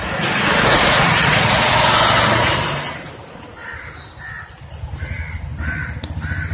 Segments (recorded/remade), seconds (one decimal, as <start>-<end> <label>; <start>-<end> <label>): 0.0-1.7 remade; 1.7-6.5 recorded